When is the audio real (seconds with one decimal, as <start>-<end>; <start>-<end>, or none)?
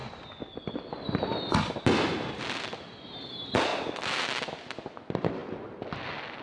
0.0-3.7; 4.6-6.4